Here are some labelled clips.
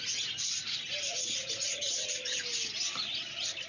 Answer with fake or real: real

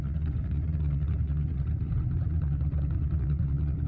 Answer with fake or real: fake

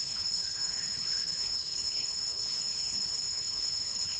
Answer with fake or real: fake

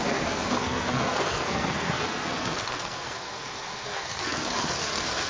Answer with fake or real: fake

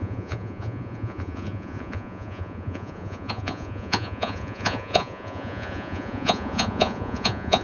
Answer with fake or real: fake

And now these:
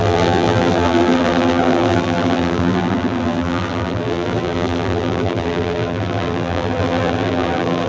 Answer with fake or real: fake